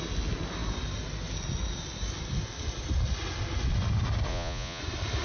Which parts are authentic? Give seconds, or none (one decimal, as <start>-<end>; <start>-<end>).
0.0-4.3; 4.8-5.2